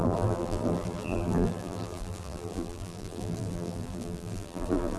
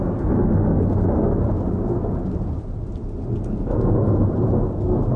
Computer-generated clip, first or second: first